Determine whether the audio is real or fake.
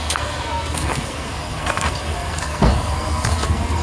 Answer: fake